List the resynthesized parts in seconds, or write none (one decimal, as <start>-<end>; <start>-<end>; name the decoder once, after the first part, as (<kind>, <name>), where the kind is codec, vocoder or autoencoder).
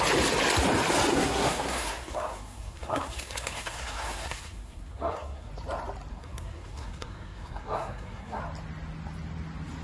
1.1-5.5 (codec, SNAC); 6.1-8.4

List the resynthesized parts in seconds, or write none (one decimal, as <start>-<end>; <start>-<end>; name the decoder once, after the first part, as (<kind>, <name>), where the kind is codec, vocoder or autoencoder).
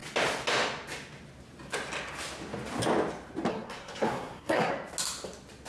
3.5-4.7 (codec, SNAC)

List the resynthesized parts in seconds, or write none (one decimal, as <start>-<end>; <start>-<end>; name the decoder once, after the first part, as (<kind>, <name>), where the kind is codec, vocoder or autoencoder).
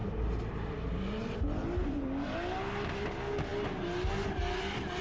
none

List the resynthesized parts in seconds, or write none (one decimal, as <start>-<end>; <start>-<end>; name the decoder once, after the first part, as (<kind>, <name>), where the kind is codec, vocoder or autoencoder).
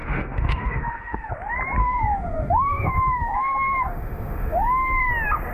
0.0-1.3 (autoencoder, DAC-VAE); 1.8-5.1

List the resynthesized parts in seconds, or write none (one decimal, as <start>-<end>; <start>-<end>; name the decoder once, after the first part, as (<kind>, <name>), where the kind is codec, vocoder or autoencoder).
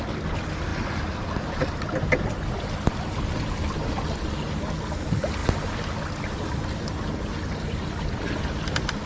none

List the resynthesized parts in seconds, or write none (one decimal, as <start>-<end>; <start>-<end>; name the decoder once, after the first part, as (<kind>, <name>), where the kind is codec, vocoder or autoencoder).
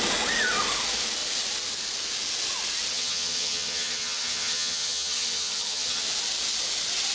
2.9-6.0 (vocoder, HiFi-GAN)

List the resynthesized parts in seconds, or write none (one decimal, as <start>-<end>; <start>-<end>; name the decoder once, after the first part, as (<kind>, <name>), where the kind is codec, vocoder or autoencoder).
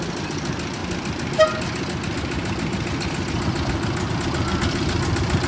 none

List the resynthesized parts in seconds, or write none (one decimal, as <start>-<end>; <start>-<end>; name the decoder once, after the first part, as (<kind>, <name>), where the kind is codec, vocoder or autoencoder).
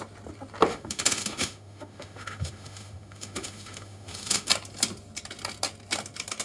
0.7-4.5 (autoencoder, DAC-VAE)